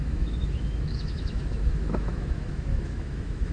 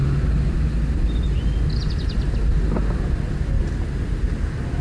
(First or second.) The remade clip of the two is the first